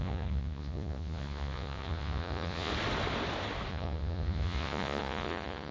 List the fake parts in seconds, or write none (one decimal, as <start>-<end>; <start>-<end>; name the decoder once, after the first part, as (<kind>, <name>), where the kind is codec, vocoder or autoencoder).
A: 0.0-2.7 (vocoder, Vocos); 3.7-5.7

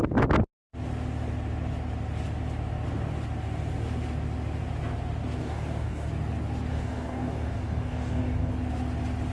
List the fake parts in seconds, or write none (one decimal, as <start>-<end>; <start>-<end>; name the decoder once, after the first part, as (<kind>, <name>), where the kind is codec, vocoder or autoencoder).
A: 5.4-6.1 (codec, DAC); 6.7-8.5